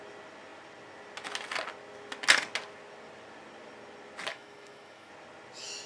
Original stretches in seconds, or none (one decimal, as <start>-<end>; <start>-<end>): 0.0-4.3; 5.1-5.9